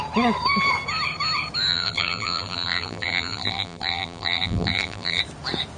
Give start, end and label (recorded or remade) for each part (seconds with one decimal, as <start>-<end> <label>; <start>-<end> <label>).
0.0-1.7 recorded; 1.7-5.2 remade; 5.2-5.8 recorded